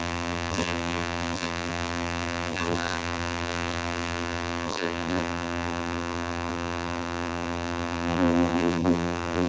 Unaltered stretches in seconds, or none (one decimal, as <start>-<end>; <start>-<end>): none